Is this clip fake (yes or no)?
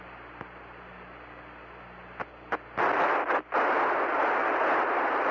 no